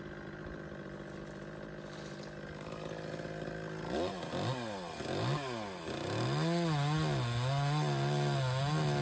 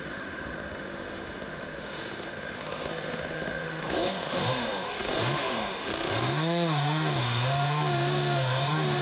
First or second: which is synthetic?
second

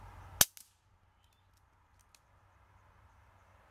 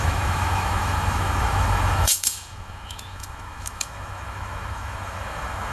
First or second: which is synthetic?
second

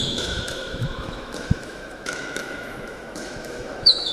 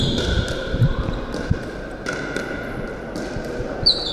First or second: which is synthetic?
first